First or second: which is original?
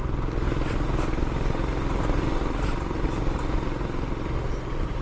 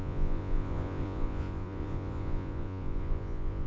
first